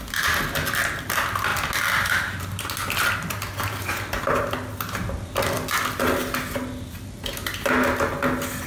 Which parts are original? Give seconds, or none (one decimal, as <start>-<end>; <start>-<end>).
0.0-8.7